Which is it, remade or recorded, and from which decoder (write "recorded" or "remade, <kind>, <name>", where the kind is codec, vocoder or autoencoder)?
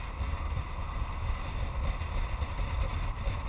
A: recorded